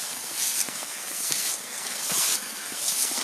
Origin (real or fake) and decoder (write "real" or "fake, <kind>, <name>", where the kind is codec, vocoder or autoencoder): fake, codec, SNAC